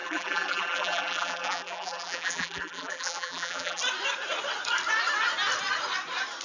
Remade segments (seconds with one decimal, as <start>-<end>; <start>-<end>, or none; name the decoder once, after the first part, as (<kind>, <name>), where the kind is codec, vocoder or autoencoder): 0.0-3.8 (vocoder, BigVGAN v2)